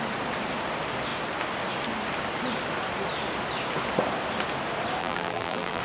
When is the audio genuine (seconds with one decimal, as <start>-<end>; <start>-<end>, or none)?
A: 0.0-5.0